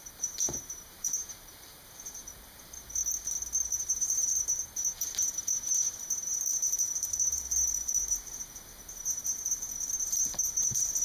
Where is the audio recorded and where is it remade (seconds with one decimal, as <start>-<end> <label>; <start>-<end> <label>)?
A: 0.0-3.0 remade; 3.0-3.8 recorded; 3.8-11.0 remade